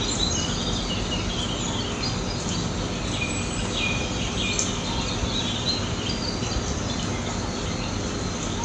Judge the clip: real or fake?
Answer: real